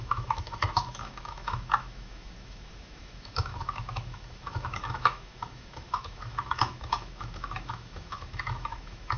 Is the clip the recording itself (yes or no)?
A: no